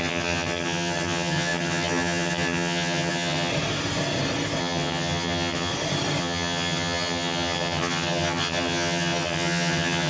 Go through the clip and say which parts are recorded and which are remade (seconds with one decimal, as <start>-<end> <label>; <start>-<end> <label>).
0.0-3.5 remade; 3.5-4.6 recorded; 4.6-5.7 remade; 5.7-6.2 recorded; 6.2-10.1 remade

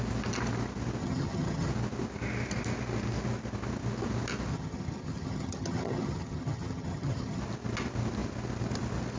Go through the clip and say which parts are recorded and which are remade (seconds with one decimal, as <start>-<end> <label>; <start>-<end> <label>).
0.0-1.0 recorded; 1.0-1.7 remade; 1.7-4.5 recorded; 4.5-7.4 remade; 7.4-9.2 recorded